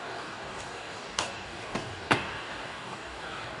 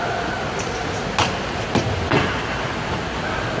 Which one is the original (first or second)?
second